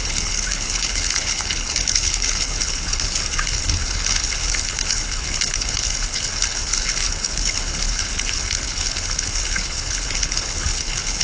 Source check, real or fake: fake